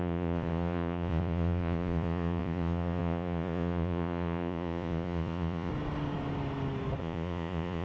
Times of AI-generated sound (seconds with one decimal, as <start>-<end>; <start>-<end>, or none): 0.0-5.7; 7.0-7.8